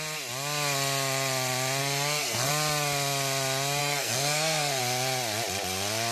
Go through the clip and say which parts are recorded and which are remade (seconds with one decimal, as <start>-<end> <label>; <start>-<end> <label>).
0.0-1.8 recorded; 1.8-2.5 remade; 2.5-3.8 recorded; 3.8-4.8 remade; 4.8-6.1 recorded